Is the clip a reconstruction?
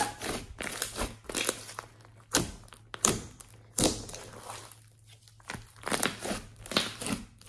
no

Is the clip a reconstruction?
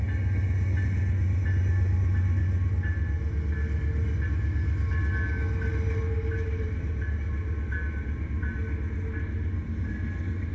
no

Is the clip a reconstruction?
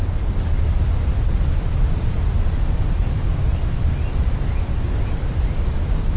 no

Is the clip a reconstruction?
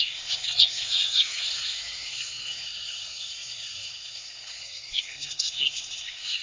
yes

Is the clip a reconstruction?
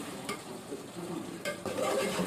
yes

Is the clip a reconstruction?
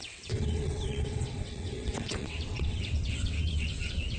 yes